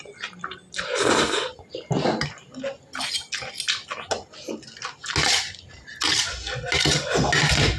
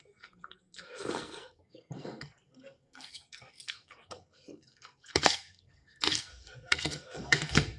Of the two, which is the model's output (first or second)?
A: second